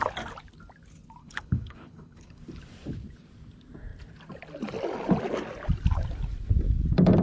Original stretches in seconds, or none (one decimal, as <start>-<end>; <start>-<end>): 0.0-1.2; 2.4-7.2